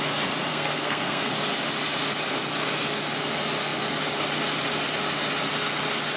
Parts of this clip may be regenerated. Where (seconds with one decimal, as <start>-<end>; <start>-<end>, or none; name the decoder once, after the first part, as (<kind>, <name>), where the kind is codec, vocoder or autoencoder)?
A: 0.5-1.3 (codec, SNAC)